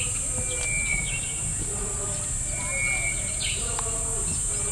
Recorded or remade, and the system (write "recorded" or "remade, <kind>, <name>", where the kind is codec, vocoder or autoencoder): recorded